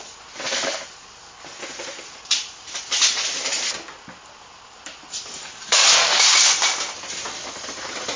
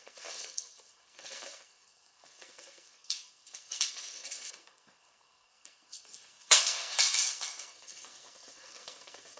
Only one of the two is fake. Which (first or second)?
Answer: second